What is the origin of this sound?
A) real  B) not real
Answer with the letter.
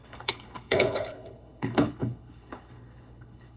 B